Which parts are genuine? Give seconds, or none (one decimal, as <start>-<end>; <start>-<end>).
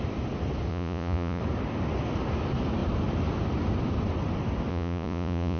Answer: 0.0-0.7; 1.4-4.7